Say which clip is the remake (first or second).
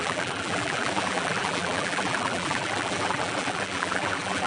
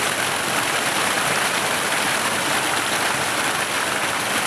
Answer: first